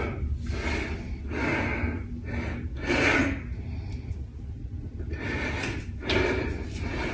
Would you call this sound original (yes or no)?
yes